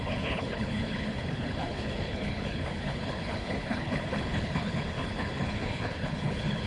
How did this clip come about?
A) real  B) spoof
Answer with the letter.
B